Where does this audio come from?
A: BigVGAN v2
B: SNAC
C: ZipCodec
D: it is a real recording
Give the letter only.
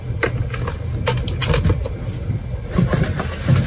D